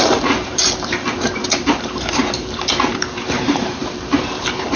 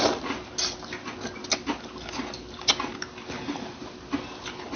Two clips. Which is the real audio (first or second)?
second